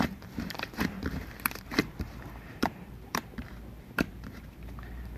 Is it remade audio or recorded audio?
remade